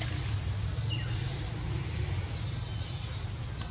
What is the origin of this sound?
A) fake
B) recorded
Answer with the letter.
B